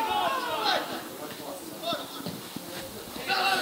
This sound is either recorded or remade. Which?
recorded